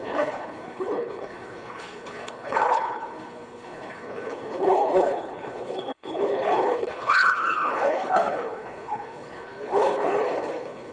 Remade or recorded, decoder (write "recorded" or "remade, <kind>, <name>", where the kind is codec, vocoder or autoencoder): remade, codec, HILCodec